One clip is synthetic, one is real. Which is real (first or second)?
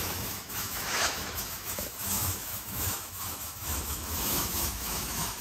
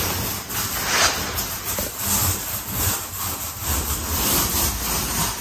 second